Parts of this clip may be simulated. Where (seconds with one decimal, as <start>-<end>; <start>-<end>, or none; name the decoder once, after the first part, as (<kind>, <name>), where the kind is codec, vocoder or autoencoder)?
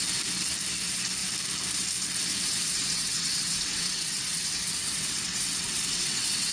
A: 2.3-6.5 (vocoder, WaveNeXt)